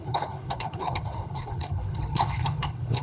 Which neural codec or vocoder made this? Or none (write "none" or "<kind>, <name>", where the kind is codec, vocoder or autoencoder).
codec, HILCodec